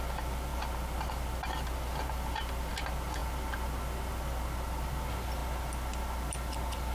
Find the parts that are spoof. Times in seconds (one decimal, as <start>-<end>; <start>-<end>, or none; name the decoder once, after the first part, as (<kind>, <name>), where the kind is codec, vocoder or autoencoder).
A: none